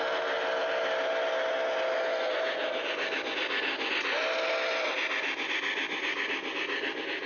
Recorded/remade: recorded